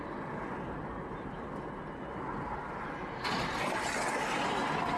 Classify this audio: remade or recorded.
recorded